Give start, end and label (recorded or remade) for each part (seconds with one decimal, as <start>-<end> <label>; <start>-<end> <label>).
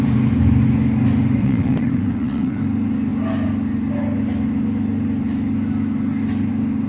0.0-1.4 recorded; 1.4-2.6 remade; 2.6-6.9 recorded